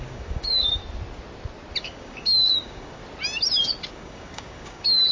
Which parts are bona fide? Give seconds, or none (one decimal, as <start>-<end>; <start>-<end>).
0.8-1.8; 3.0-3.9